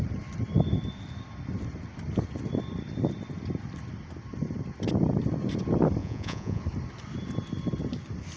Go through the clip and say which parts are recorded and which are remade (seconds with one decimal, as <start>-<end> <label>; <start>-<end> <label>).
0.0-6.0 recorded; 6.0-6.6 remade; 6.6-8.4 recorded